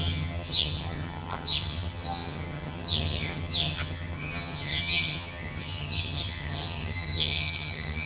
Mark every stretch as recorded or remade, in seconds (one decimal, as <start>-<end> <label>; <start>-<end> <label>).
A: 0.0-8.1 remade